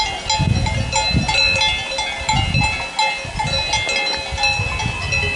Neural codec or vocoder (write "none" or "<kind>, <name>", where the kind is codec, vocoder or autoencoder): none